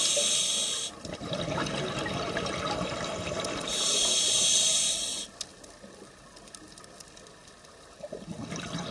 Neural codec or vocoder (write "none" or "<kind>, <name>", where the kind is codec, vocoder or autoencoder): none